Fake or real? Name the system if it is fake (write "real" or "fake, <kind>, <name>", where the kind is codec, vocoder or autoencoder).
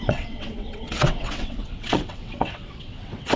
fake, vocoder, WaveNeXt